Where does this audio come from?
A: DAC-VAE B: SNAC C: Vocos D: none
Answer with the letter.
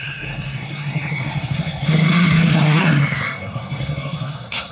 B